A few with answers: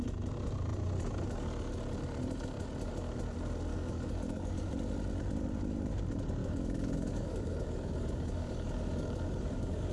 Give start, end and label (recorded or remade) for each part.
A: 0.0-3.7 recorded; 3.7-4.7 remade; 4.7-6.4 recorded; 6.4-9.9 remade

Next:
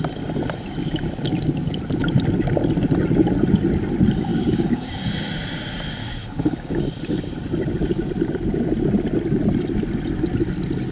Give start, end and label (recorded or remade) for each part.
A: 0.0-4.3 recorded; 4.3-4.9 remade; 4.9-6.0 recorded; 6.0-6.8 remade; 6.8-10.9 recorded